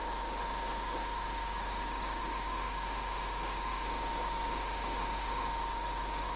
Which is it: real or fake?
fake